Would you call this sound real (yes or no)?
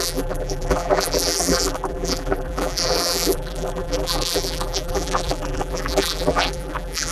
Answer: no